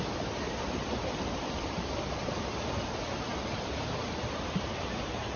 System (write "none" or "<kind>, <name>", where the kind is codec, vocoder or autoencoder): vocoder, BigVGAN v2